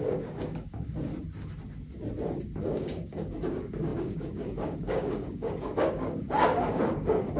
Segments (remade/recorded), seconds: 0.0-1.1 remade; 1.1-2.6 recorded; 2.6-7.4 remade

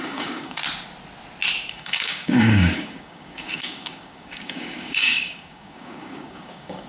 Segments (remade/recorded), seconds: 0.0-0.6 remade; 0.6-1.7 recorded; 1.7-6.9 remade

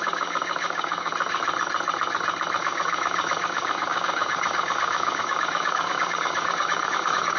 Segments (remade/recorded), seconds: 0.0-1.1 remade; 1.1-2.6 recorded; 2.6-7.4 remade